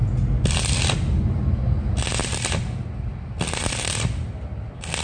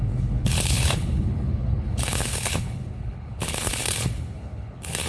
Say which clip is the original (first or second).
first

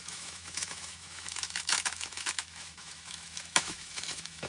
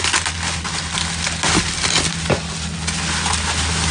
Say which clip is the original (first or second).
second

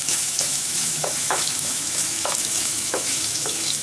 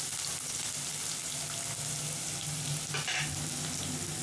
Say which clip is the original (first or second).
second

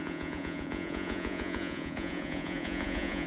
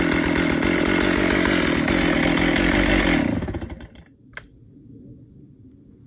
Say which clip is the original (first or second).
second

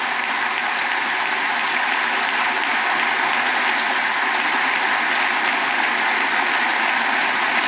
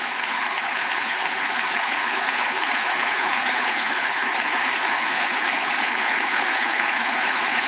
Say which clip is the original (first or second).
first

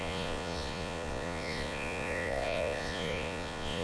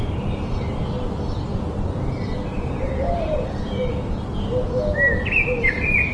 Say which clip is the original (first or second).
second